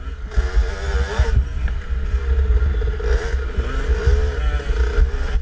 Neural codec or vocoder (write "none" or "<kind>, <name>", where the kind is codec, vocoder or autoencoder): none